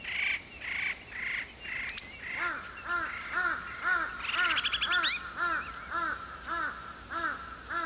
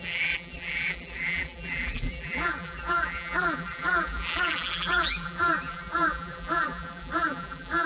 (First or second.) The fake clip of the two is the second